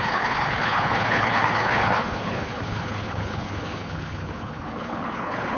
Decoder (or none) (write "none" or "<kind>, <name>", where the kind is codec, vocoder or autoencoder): codec, HILCodec